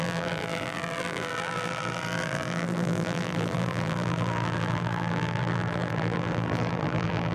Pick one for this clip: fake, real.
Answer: fake